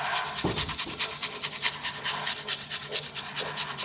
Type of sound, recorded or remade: recorded